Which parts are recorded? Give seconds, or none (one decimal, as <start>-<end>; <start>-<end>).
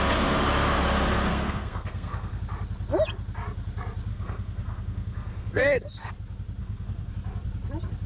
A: 0.0-1.3; 2.4-4.1; 6.1-6.6; 7.1-8.1